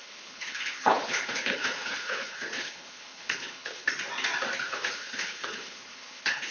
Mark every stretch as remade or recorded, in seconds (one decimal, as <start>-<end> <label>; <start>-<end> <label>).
0.0-3.9 remade; 3.9-4.7 recorded; 4.7-6.5 remade